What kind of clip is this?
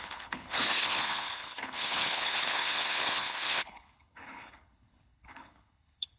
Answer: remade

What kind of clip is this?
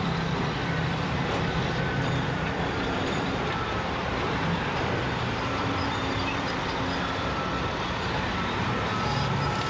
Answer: remade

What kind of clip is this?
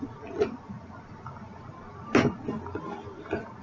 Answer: recorded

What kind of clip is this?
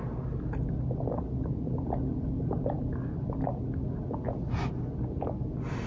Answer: recorded